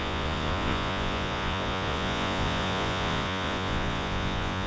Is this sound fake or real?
fake